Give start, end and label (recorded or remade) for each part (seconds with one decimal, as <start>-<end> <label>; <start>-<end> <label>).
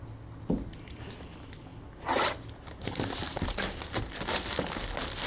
0.0-5.3 recorded